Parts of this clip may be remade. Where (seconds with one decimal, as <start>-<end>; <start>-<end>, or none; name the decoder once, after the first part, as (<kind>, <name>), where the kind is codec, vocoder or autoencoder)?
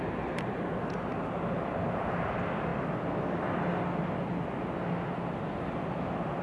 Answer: none